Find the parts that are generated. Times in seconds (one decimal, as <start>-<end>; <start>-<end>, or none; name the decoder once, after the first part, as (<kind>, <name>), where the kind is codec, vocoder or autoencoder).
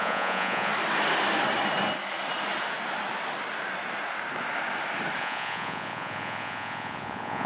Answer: 0.0-0.7 (vocoder, Vocos); 5.2-7.5